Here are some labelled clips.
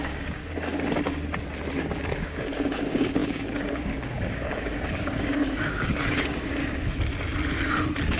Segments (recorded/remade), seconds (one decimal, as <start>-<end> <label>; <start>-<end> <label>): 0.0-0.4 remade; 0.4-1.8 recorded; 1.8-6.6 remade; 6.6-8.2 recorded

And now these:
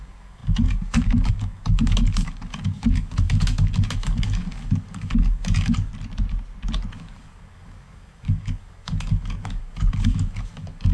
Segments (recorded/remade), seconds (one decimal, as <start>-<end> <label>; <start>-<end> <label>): 0.0-5.9 remade; 5.9-6.9 recorded; 6.9-10.9 remade

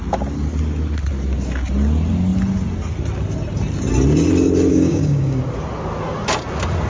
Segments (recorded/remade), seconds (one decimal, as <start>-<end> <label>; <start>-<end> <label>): 0.0-4.7 recorded; 4.7-5.4 remade; 5.4-6.9 recorded

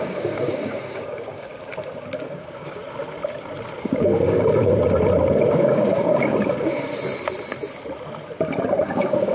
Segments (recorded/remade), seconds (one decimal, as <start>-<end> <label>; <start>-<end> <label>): 0.0-1.5 remade; 1.5-2.2 recorded; 2.2-2.8 remade; 2.8-3.8 recorded; 3.8-4.7 remade; 4.7-5.5 recorded; 5.5-6.9 remade; 6.9-8.8 recorded; 8.8-9.3 remade

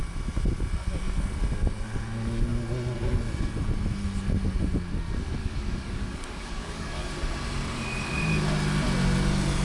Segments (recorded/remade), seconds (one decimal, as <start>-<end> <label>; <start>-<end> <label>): 0.0-5.4 recorded; 5.4-7.1 remade; 7.1-9.6 recorded

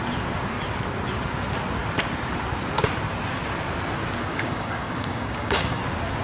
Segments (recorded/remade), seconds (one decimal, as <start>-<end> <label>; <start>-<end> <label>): 0.0-4.3 recorded; 4.3-5.8 remade; 5.8-6.2 recorded

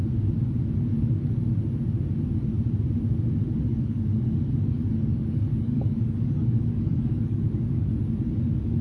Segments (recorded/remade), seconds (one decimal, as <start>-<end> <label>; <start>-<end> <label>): 0.0-0.9 recorded; 0.9-1.4 remade; 1.4-3.7 recorded; 3.7-7.9 remade; 7.9-8.8 recorded